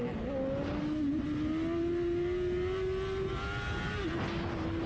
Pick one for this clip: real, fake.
real